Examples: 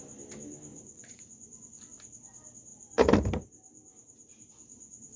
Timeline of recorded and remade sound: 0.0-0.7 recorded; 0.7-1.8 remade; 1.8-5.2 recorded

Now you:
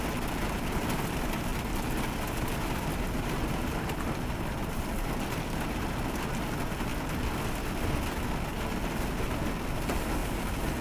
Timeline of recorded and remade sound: 0.0-1.5 recorded; 1.5-6.0 remade; 6.0-10.8 recorded

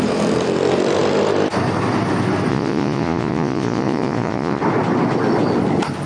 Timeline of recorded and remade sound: 0.0-2.5 recorded; 2.5-4.6 remade; 4.6-6.1 recorded

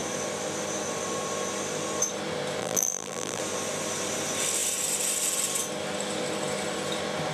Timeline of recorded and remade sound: 0.0-2.6 recorded; 2.6-3.4 remade; 3.4-7.3 recorded

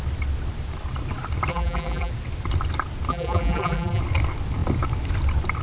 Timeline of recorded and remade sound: 0.0-1.5 recorded; 1.5-2.1 remade; 2.1-3.1 recorded; 3.1-4.0 remade; 4.0-5.6 recorded